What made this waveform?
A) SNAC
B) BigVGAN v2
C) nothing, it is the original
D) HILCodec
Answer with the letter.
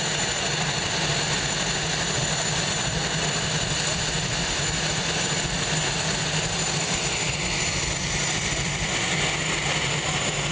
C